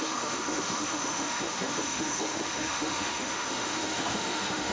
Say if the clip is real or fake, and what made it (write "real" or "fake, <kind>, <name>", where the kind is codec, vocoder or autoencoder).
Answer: fake, autoencoder, DAC-VAE